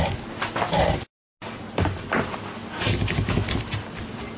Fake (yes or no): no